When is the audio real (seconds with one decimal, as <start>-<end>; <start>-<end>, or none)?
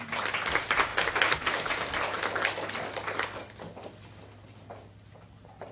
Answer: 0.0-5.7